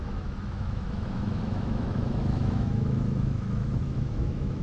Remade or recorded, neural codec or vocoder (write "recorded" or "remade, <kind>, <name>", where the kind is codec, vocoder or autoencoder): remade, autoencoder, DAC-VAE